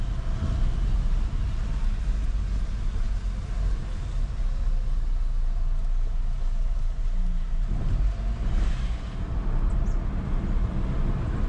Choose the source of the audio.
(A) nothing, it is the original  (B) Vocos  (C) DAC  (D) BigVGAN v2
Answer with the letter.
A